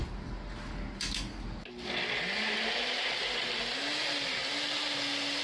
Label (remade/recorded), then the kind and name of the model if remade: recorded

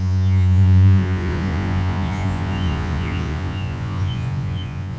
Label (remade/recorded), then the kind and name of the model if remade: remade, vocoder, Vocos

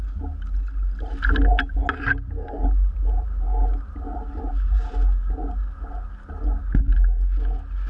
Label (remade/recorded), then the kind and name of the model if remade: recorded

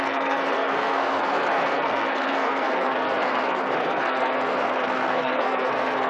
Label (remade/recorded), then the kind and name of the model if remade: remade, codec, SNAC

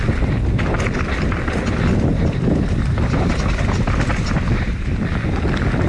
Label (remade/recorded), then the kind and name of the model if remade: recorded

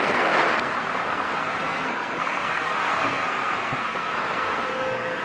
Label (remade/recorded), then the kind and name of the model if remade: remade, codec, SNAC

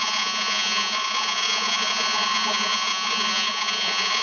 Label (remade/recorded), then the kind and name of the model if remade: remade, vocoder, Vocos